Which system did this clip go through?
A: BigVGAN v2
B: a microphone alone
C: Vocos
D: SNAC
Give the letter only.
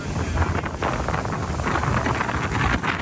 B